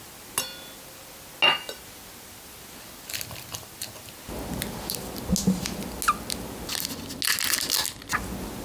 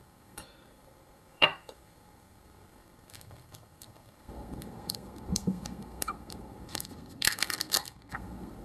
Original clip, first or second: first